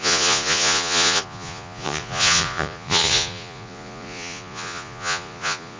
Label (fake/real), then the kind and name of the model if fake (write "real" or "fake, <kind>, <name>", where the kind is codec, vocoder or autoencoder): fake, vocoder, Vocos